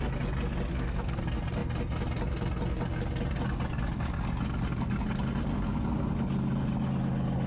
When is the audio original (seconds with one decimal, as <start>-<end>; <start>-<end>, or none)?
0.0-0.7; 1.2-7.5